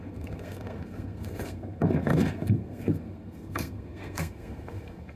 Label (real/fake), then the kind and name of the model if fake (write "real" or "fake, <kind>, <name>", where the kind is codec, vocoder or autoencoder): fake, codec, SNAC